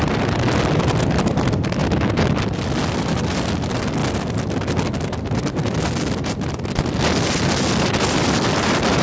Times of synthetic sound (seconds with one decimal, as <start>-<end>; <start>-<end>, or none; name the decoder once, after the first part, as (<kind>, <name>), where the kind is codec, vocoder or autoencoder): 0.0-1.8 (vocoder, BigVGAN v2); 2.9-4.0; 7.8-9.0